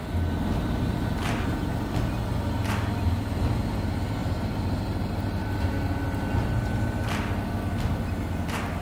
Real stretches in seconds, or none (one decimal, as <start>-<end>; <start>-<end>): 0.0-8.8